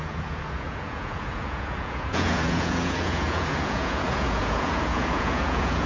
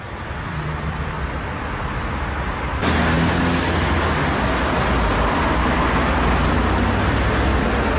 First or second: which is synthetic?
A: first